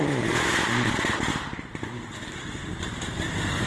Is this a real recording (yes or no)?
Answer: no